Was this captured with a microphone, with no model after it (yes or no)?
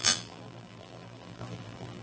no